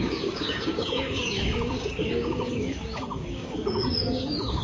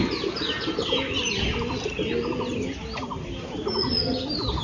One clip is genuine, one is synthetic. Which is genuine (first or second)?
second